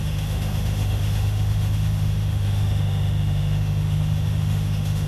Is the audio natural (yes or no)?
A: no